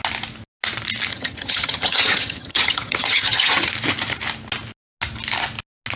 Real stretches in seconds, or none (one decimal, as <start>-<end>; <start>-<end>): 0.0-1.1; 3.7-6.0